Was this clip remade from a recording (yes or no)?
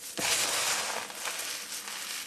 no